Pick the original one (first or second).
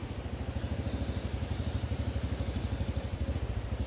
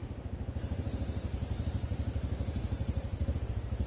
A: first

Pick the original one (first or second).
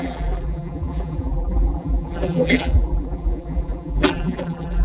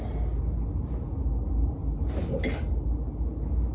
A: second